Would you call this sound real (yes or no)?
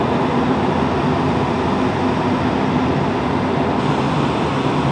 yes